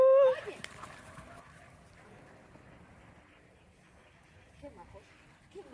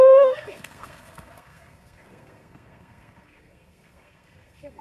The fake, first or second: second